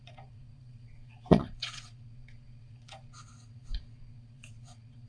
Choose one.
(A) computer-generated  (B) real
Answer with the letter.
A